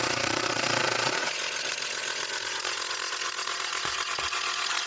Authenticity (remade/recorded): remade